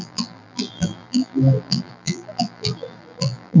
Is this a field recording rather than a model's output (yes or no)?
no